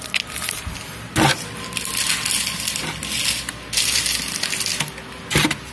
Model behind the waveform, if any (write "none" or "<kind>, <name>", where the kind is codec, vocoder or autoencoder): none